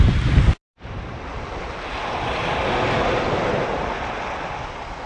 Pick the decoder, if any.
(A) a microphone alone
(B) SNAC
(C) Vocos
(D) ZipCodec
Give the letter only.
A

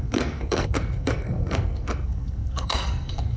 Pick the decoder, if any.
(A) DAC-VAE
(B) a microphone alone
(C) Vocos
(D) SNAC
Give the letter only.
D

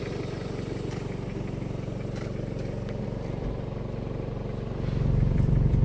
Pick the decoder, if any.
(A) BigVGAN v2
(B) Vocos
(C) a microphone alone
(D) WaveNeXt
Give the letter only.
A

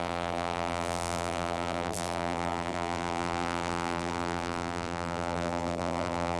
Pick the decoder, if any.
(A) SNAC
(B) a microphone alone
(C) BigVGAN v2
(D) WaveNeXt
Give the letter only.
C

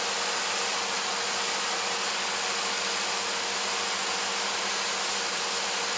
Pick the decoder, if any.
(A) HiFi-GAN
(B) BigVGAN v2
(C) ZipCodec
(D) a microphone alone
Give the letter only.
D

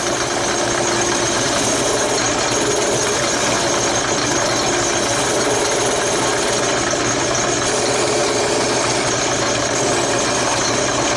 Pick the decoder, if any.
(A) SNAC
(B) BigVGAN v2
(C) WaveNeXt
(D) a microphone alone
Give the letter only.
D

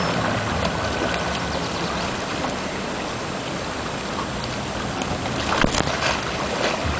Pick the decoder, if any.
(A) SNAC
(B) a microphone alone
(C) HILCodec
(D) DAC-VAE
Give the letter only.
B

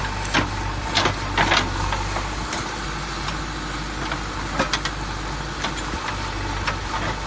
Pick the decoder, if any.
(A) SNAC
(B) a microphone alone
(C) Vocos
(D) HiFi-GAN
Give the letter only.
B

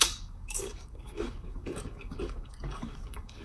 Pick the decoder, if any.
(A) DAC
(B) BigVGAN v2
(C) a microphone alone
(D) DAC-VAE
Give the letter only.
A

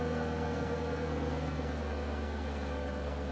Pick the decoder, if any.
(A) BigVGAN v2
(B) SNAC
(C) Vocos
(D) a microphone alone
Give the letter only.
B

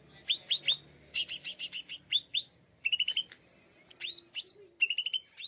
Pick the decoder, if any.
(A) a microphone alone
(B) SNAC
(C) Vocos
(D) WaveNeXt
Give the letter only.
A